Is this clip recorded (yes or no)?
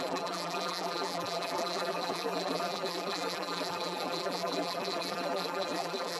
no